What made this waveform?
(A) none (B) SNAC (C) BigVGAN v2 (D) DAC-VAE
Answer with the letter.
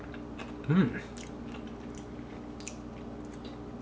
A